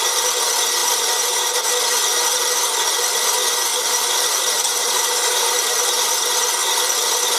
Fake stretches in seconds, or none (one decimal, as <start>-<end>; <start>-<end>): 0.8-1.7; 3.7-5.7